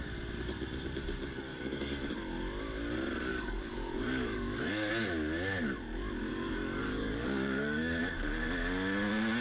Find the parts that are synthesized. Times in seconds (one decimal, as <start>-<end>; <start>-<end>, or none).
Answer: 1.3-2.1; 3.3-4.9; 6.3-8.0